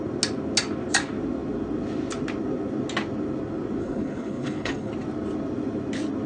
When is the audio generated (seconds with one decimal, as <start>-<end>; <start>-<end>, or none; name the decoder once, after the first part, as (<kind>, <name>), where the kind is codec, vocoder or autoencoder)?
3.8-4.9 (codec, HILCodec)